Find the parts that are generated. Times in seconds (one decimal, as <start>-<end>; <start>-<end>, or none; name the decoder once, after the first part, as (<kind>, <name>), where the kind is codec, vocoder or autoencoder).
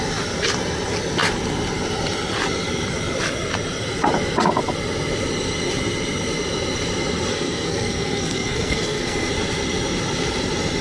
7.3-9.3 (codec, SNAC)